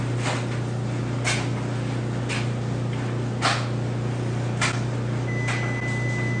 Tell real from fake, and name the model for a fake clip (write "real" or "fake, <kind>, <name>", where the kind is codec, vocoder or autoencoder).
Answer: real